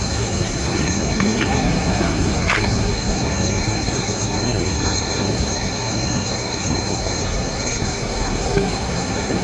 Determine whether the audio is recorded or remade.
remade